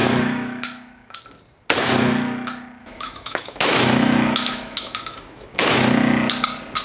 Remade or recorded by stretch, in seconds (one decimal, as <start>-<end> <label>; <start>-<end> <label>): 0.0-1.2 remade; 1.2-2.8 recorded; 2.8-5.6 remade; 5.6-6.8 recorded